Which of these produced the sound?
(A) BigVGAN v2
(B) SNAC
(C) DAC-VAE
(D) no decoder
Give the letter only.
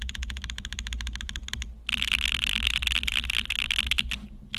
D